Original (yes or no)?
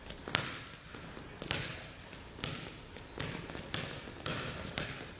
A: yes